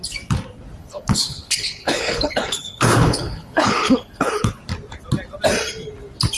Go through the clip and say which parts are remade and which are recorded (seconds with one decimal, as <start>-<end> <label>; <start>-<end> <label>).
0.0-0.8 recorded; 0.8-4.6 remade; 4.6-6.4 recorded